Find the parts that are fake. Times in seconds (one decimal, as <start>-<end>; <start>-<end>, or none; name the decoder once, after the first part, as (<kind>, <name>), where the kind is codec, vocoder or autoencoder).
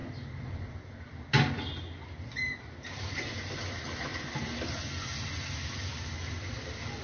none